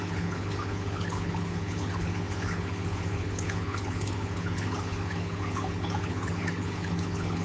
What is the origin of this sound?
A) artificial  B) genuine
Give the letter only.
A